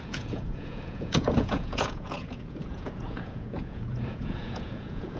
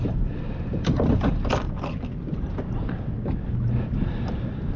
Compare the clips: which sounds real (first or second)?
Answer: second